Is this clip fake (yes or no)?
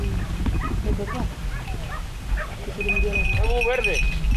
no